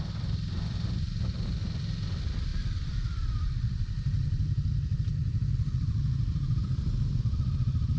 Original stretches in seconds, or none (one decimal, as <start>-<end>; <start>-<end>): none